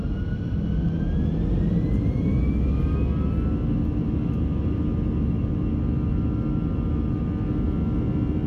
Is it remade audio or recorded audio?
recorded